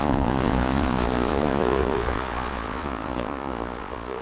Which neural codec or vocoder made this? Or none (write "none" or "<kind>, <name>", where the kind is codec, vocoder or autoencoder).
vocoder, Vocos